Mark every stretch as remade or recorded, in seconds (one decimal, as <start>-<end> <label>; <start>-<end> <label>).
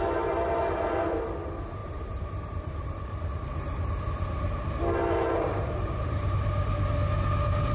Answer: 0.0-1.8 recorded; 1.8-4.0 remade; 4.0-5.5 recorded; 5.5-6.3 remade; 6.3-7.7 recorded